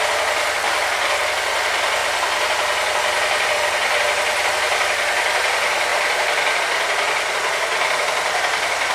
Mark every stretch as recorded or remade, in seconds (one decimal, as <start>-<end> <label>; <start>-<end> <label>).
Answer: 0.0-8.9 recorded